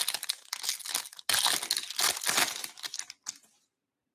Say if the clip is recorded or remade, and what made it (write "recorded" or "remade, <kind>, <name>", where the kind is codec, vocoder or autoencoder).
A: recorded